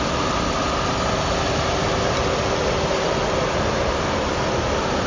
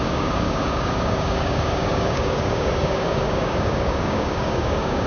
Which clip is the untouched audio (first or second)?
first